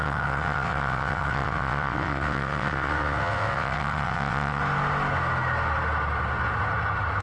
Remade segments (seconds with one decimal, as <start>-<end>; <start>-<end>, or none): 0.0-4.6